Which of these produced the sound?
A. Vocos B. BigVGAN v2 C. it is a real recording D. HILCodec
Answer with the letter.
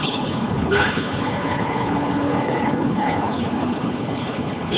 D